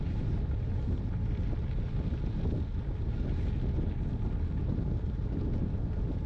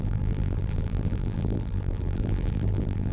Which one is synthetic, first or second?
second